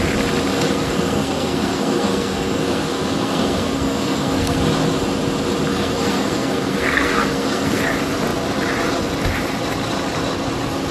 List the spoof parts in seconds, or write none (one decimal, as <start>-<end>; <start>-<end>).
0.5-4.6; 5.7-7.8